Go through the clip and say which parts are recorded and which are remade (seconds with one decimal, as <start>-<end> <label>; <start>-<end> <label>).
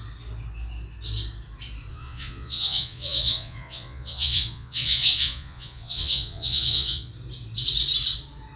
0.0-1.9 recorded; 1.9-7.1 remade; 7.1-8.6 recorded